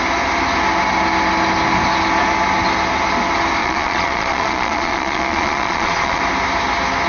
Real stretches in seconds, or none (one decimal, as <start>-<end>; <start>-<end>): 0.0-3.6; 6.2-7.1